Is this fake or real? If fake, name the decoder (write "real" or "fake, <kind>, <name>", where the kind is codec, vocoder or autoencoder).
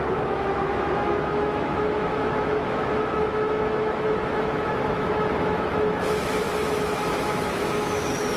fake, autoencoder, DAC-VAE